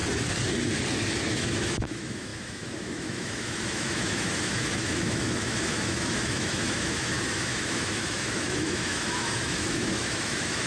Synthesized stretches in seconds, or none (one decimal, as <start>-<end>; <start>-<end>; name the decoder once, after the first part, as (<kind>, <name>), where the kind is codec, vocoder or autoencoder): 1.2-10.7 (autoencoder, DAC-VAE)